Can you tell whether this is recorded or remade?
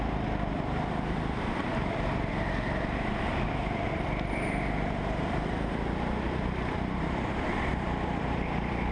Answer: remade